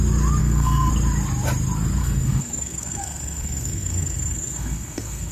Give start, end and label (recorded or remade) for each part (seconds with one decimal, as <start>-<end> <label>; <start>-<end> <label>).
0.0-0.4 recorded; 0.4-0.9 remade; 0.9-2.0 recorded; 2.0-5.3 remade